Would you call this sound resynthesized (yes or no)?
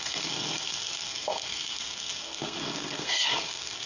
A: yes